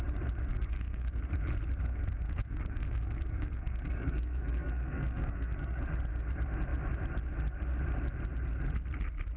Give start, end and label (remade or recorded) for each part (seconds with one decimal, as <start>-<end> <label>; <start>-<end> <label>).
0.0-0.5 recorded; 0.5-1.1 remade; 1.1-1.9 recorded; 1.9-5.8 remade; 5.8-9.4 recorded